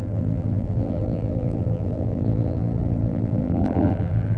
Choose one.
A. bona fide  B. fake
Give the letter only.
B